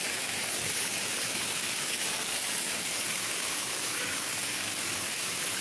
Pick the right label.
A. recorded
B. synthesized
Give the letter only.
B